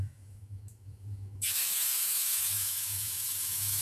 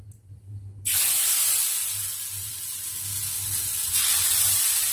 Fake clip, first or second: first